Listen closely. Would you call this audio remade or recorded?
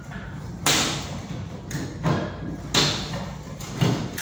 recorded